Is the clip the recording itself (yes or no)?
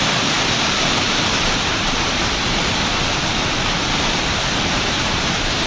no